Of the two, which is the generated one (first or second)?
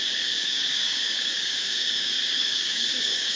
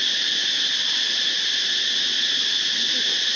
first